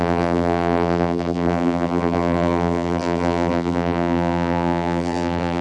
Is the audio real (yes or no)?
no